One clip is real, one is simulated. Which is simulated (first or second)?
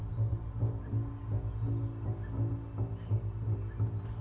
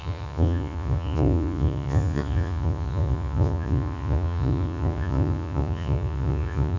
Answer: second